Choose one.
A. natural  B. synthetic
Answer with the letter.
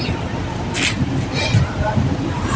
A